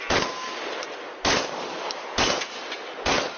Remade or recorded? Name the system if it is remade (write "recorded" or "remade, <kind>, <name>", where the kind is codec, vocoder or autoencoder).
recorded